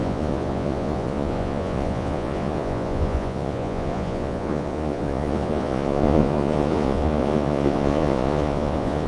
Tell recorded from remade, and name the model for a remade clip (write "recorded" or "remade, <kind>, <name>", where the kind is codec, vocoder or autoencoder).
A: remade, vocoder, Vocos